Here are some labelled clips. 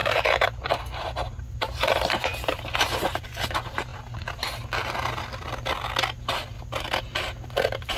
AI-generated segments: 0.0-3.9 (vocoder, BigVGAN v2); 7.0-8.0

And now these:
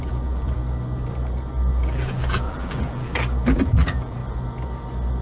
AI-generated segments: 0.0-0.6 (vocoder, BigVGAN v2); 1.7-4.2